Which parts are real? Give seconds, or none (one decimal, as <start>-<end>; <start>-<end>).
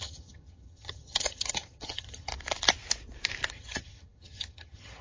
2.3-3.5